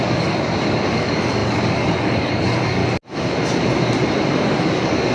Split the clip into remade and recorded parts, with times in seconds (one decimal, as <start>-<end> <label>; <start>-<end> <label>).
0.0-2.8 remade; 2.8-4.3 recorded; 4.3-5.1 remade